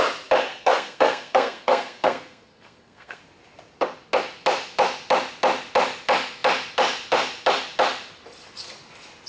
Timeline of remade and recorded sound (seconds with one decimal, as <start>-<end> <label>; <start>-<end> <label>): 0.0-0.5 recorded; 0.5-3.2 remade; 3.2-9.3 recorded